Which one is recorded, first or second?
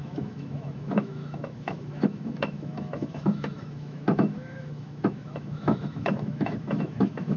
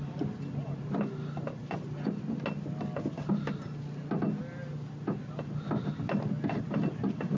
second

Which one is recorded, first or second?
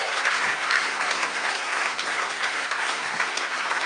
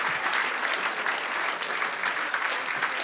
second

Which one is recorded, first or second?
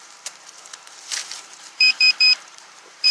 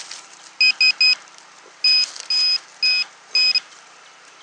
second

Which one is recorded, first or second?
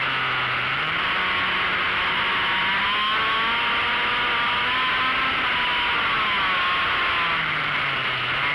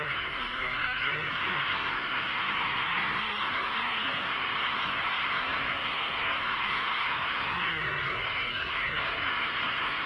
first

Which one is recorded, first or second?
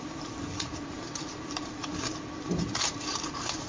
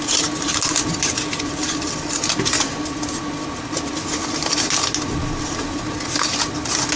second